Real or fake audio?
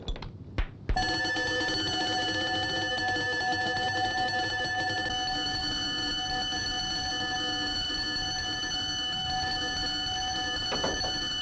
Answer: real